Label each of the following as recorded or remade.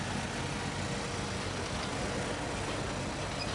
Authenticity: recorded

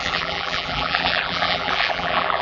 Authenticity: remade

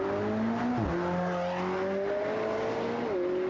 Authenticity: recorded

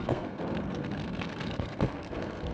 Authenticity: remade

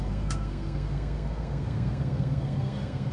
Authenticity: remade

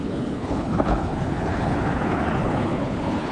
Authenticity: remade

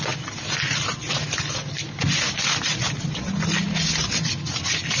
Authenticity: recorded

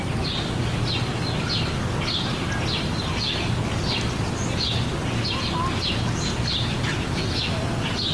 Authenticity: recorded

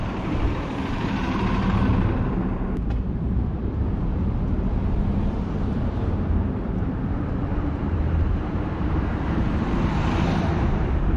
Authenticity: remade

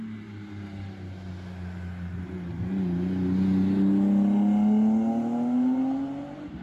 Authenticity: recorded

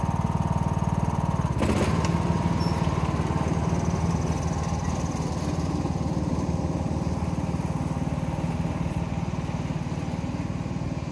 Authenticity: recorded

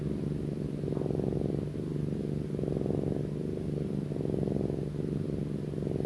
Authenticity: recorded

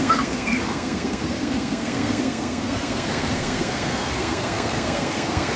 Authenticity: remade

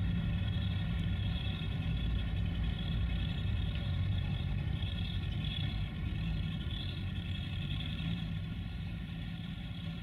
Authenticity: remade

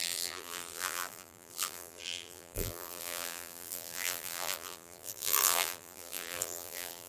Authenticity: remade